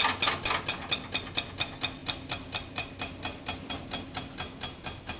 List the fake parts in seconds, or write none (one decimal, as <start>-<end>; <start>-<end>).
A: none